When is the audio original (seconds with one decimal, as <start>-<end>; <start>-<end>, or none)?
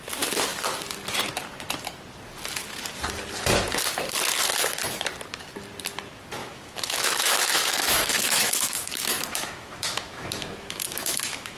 0.0-6.4